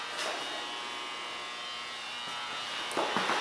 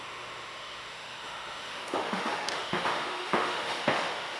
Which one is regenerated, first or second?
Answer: second